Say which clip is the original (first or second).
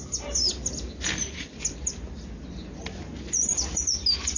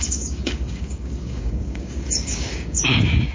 first